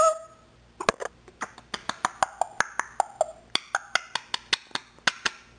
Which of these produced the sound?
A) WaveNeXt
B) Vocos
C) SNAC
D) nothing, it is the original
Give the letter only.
D